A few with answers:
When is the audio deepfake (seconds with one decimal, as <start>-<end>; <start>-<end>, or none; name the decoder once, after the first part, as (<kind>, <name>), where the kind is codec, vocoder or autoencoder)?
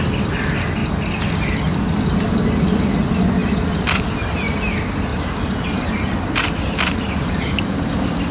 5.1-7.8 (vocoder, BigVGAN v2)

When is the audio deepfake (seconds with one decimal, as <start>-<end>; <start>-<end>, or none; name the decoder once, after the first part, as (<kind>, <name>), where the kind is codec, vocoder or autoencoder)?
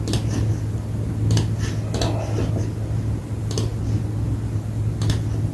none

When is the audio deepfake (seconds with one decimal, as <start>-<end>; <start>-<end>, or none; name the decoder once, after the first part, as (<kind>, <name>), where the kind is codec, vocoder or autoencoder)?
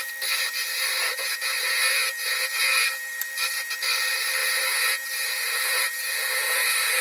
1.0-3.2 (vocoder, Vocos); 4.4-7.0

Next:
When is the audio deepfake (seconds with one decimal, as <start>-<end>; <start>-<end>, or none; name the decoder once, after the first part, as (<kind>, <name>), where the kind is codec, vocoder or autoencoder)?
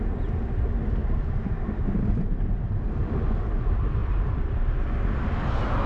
none